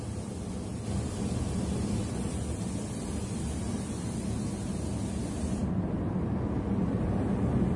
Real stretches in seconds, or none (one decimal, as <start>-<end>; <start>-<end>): 0.0-7.8